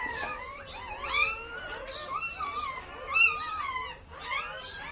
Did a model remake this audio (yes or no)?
no